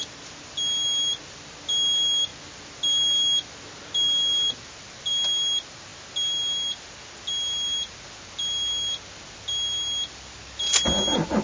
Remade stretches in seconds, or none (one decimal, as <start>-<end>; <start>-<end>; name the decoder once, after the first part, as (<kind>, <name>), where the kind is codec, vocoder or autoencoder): none